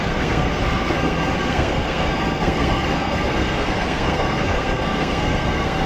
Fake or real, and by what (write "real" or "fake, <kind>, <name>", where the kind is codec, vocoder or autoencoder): fake, codec, SNAC